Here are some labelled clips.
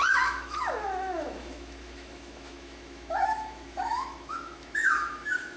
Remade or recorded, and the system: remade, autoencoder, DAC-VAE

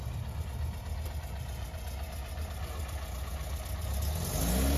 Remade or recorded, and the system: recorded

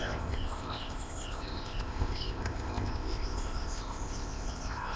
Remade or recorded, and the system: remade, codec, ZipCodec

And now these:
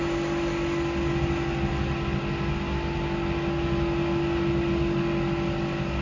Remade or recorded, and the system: recorded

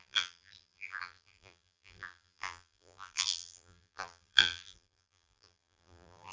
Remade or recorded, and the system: remade, vocoder, BigVGAN v2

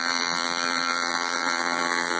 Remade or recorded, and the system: remade, vocoder, BigVGAN v2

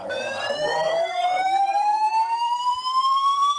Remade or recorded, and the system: remade, vocoder, BigVGAN v2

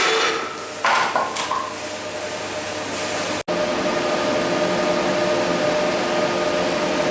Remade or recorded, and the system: recorded